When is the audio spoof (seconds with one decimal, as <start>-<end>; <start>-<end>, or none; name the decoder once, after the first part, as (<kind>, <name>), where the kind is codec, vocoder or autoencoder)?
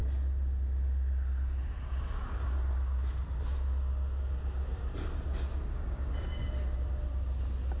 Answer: none